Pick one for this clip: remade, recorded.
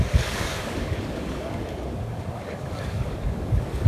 remade